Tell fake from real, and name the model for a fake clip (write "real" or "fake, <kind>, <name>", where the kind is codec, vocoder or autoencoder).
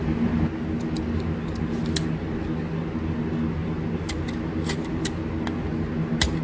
real